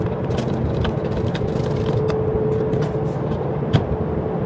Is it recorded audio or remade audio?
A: recorded